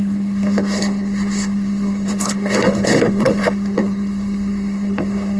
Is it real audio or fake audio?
fake